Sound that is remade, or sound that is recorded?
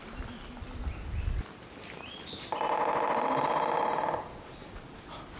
recorded